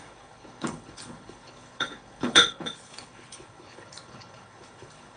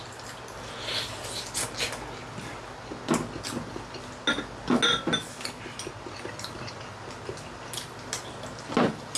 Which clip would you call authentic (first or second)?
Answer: second